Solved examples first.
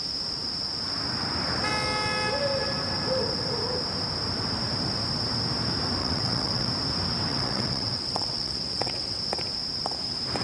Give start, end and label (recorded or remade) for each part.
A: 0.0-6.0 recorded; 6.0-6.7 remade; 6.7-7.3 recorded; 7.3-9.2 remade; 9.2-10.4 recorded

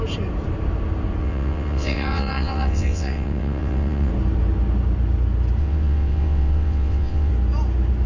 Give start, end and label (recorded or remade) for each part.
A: 0.0-1.2 recorded; 1.2-4.1 remade; 4.1-5.6 recorded; 5.6-7.3 remade; 7.3-8.1 recorded